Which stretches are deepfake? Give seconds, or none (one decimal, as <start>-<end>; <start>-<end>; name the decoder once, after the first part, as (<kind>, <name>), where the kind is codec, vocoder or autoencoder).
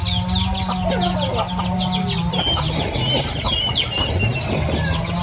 none